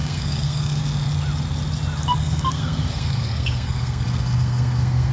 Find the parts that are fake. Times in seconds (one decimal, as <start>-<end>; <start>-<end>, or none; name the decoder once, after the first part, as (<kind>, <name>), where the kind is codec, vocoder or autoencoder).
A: 0.0-0.8 (codec, SNAC); 2.2-5.1